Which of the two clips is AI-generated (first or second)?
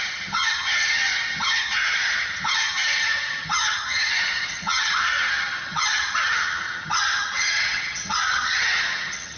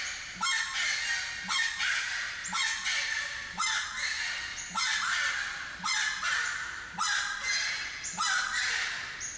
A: first